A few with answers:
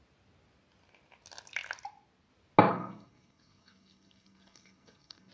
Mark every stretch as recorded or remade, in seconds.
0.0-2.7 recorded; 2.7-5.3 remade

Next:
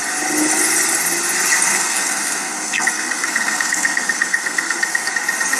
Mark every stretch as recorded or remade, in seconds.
0.0-1.7 recorded; 1.7-5.1 remade; 5.1-5.6 recorded